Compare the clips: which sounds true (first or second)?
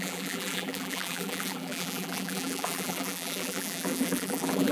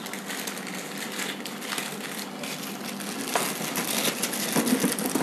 second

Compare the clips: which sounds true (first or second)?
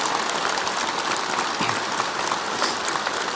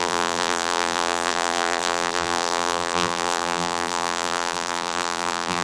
first